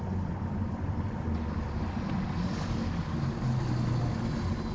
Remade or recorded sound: recorded